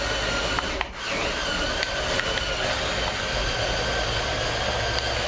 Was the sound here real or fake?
real